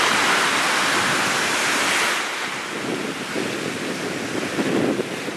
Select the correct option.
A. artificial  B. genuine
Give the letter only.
B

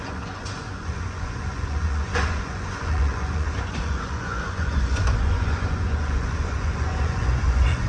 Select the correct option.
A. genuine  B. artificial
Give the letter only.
B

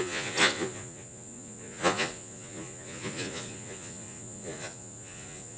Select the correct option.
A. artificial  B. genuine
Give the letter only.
A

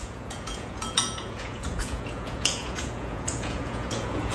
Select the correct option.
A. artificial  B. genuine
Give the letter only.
A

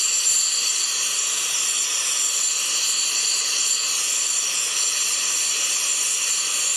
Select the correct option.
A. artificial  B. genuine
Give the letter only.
B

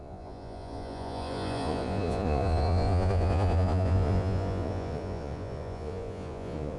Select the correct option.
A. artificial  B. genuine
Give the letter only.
A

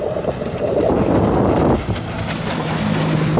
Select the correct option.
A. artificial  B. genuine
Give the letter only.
B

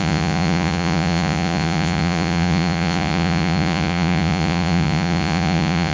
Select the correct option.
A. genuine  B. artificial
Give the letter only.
B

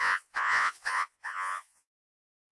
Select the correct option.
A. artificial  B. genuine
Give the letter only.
A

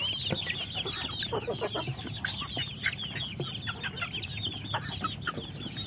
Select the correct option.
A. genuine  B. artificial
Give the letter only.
A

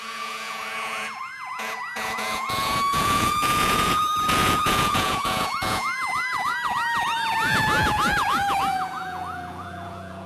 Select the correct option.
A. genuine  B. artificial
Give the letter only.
B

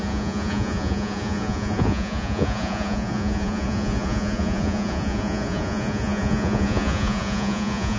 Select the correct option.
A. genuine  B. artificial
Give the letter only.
B